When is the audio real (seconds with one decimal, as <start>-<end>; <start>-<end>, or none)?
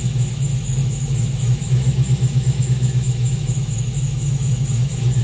none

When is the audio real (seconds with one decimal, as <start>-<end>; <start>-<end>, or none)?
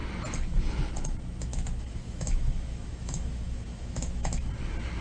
0.0-1.5; 4.5-5.0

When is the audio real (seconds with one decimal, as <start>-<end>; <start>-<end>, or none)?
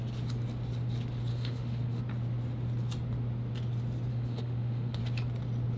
0.0-1.3; 2.0-4.1; 5.0-5.8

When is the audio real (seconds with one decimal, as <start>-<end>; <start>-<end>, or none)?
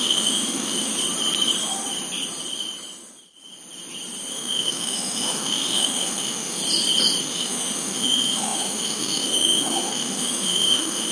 0.9-4.3; 6.6-7.2